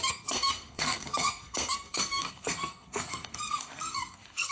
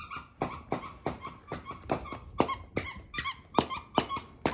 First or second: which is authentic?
second